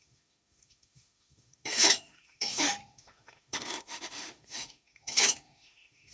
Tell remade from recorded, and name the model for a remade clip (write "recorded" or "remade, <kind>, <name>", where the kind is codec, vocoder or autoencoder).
remade, autoencoder, DAC-VAE